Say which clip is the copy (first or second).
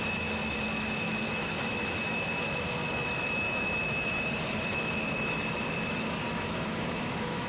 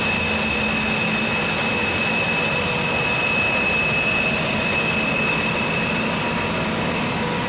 first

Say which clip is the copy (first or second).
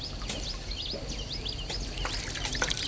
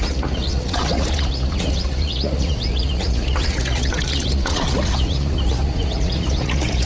second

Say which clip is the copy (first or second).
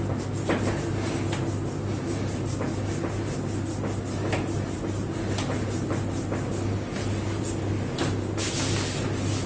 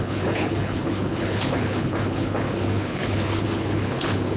second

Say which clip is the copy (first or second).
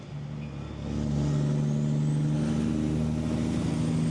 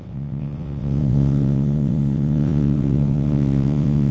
second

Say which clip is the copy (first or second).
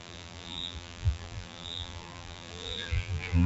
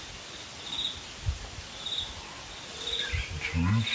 first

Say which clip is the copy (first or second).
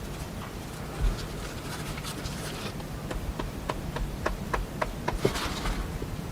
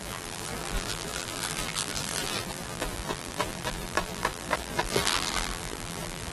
second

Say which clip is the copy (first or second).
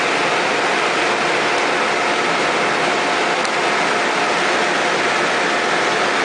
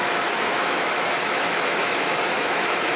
second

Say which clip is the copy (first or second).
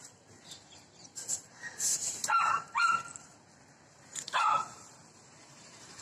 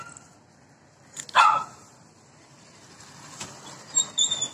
first